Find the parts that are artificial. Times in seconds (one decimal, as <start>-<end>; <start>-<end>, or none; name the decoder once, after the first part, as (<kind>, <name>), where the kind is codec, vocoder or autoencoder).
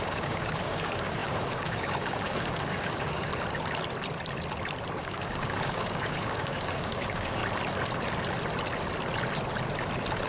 0.0-3.3 (codec, DAC); 5.0-7.4